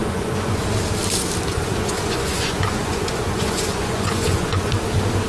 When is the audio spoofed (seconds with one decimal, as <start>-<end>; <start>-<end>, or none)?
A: 0.0-0.6; 1.5-4.7